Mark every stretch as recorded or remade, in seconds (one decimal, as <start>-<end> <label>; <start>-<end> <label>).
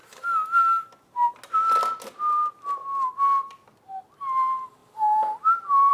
0.0-5.9 recorded